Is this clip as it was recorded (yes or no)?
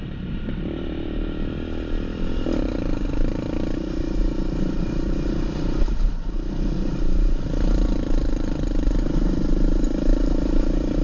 no